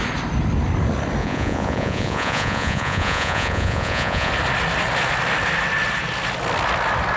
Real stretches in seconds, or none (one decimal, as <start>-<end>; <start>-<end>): 0.0-1.2; 4.3-7.2

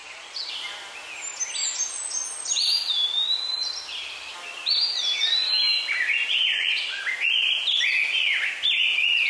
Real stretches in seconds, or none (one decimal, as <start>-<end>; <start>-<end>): 0.5-6.5; 7.0-9.3

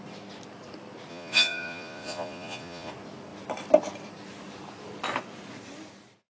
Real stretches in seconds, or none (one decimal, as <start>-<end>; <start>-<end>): 0.0-1.1; 2.9-6.4

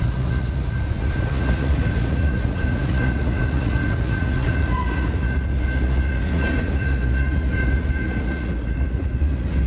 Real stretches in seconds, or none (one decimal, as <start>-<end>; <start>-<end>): none

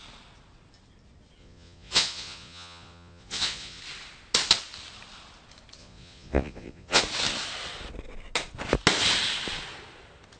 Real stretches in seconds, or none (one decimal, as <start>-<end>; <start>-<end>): 0.0-1.4; 3.8-5.8; 7.0-10.4

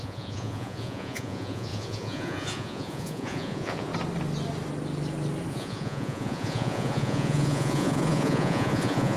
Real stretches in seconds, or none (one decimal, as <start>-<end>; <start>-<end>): 3.9-5.5

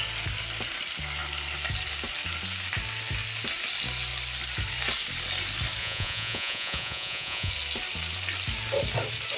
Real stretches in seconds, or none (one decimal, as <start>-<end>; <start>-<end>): 0.0-5.8; 7.5-9.4

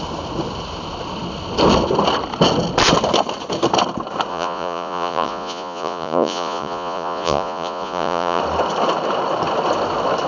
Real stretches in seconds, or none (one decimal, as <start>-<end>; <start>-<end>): 0.0-4.3; 8.4-10.3